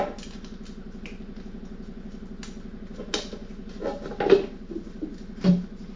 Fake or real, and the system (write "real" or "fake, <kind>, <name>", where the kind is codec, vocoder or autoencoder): real